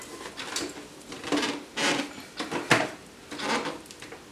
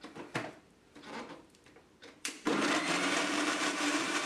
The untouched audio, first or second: first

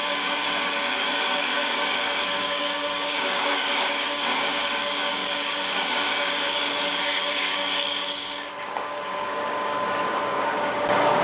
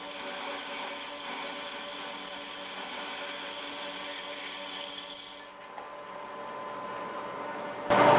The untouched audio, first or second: second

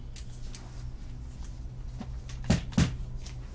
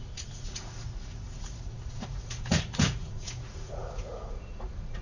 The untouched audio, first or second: first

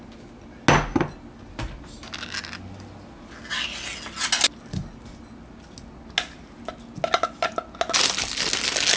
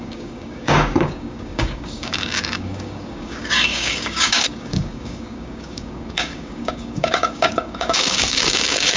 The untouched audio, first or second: first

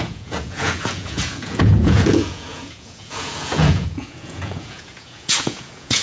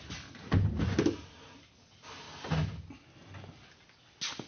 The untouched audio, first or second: second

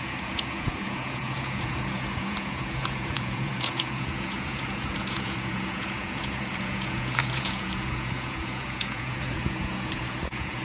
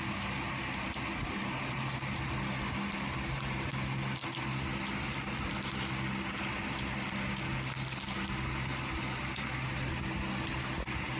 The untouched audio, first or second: second